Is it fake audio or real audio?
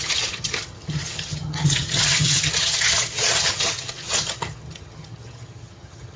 fake